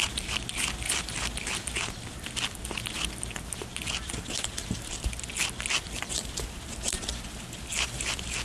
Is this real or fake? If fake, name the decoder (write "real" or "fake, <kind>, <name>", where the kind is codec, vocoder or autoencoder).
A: real